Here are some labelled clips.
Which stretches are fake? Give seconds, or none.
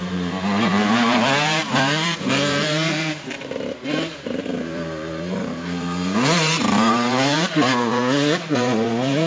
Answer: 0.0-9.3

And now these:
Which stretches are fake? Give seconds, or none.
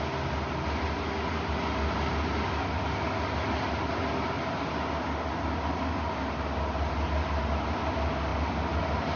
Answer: none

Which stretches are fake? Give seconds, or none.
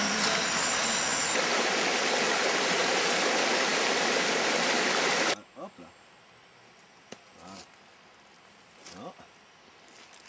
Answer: 2.8-3.3